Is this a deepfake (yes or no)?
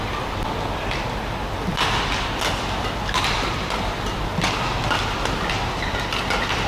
no